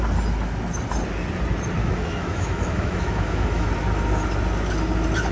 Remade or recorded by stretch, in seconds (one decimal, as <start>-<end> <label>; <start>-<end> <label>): 0.0-1.8 recorded; 1.8-3.7 remade; 3.7-5.3 recorded